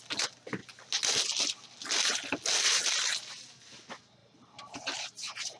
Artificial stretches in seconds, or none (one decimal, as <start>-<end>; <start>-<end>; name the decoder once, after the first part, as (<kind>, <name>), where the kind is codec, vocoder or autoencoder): 4.2-5.6 (vocoder, BigVGAN v2)